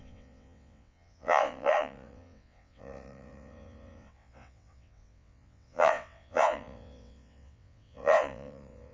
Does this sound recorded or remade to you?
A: remade